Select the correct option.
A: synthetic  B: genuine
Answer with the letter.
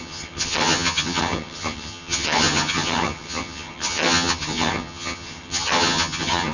A